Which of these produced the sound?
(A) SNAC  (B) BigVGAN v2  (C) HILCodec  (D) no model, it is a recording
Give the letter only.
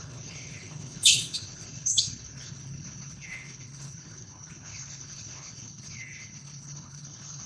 C